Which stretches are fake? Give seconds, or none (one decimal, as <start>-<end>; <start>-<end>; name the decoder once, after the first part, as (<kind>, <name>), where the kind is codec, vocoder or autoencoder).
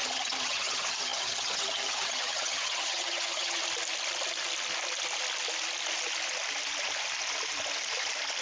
0.0-3.6 (vocoder, HiFi-GAN)